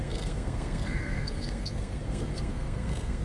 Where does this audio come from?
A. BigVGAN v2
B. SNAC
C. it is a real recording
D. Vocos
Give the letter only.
B